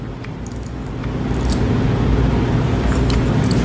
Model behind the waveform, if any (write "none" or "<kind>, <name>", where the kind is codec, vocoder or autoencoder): none